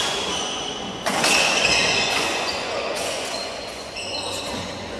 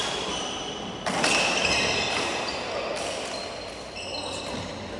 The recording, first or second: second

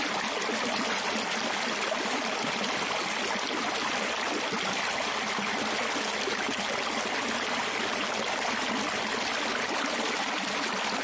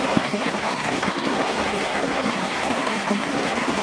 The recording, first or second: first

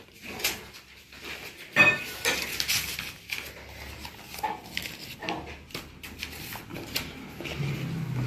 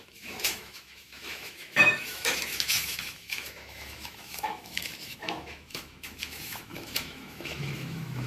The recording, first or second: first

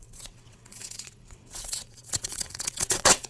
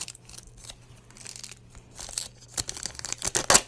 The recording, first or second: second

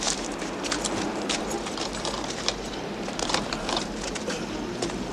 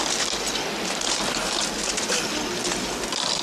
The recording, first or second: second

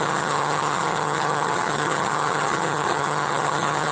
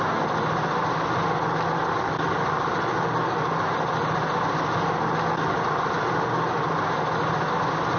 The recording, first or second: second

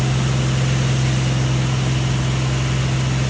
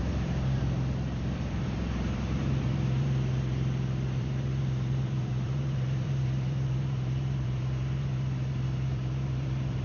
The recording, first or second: first